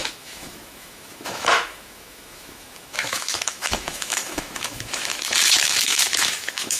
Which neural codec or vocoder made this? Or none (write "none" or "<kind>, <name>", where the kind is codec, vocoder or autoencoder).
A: autoencoder, DAC-VAE